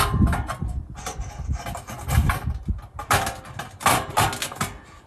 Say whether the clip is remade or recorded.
recorded